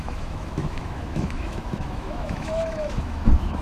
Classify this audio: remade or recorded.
remade